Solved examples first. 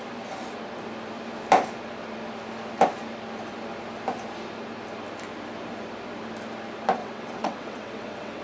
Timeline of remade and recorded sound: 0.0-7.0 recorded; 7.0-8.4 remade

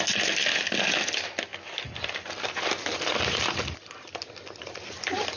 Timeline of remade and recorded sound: 0.0-5.4 recorded

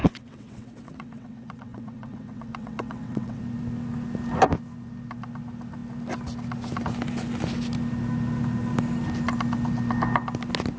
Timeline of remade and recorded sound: 0.0-3.4 remade; 3.4-10.8 recorded

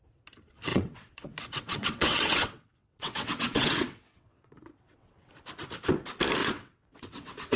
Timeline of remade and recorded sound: 0.0-0.7 recorded; 0.7-5.3 remade; 5.3-6.4 recorded; 6.4-7.6 remade

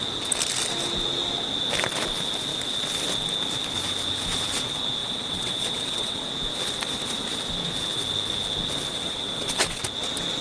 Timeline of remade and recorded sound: 0.0-5.0 recorded; 5.0-6.3 remade; 6.3-8.9 recorded; 8.9-9.8 remade; 9.8-10.4 recorded

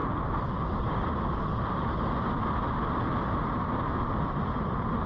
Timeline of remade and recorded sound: 0.0-5.1 recorded

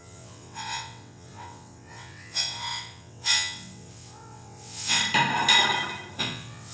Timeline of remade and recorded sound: 0.0-5.0 remade; 5.0-6.2 recorded; 6.2-6.7 remade

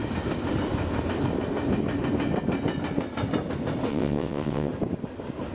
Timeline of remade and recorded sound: 0.0-3.9 recorded; 3.9-4.7 remade; 4.7-5.5 recorded